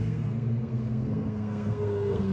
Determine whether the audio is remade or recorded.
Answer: remade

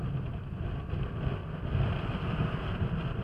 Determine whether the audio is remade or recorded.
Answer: recorded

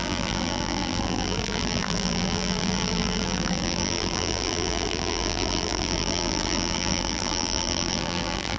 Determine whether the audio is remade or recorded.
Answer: remade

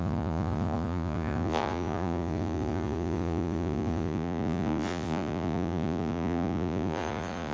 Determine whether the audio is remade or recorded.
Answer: remade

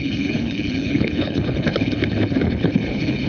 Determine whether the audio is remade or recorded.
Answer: remade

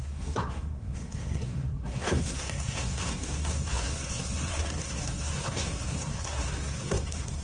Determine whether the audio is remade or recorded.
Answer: remade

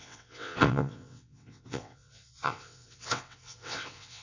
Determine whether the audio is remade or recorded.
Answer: remade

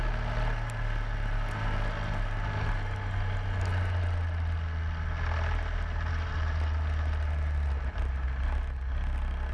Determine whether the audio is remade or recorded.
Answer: recorded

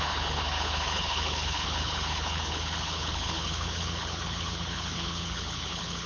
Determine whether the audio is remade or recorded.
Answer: remade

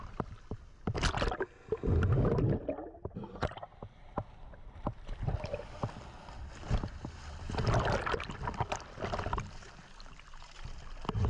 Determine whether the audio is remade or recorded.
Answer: recorded